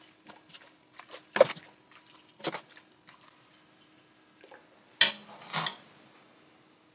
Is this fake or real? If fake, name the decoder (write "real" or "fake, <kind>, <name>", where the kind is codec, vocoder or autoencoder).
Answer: real